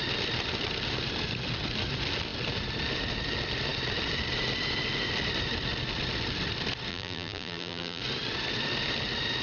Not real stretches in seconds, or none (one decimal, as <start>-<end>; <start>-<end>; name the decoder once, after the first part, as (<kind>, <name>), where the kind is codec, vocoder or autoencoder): 6.9-8.0 (vocoder, BigVGAN v2)